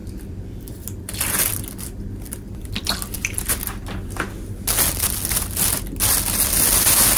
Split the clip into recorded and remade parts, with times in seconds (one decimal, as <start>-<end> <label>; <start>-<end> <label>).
0.0-3.6 remade; 3.6-7.2 recorded